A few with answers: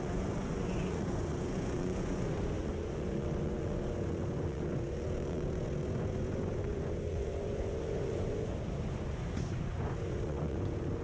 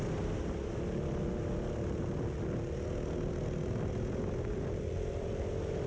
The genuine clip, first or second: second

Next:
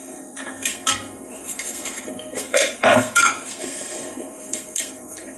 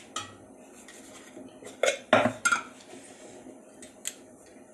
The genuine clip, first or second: second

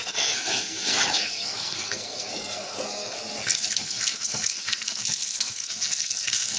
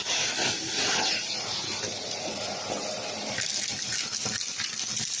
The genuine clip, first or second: second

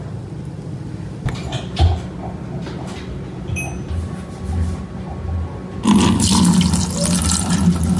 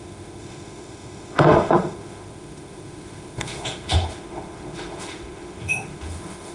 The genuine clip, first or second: first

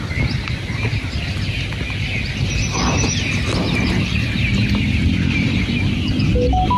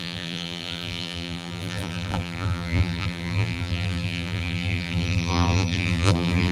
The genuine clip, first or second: first